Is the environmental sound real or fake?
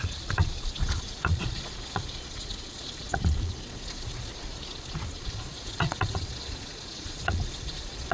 fake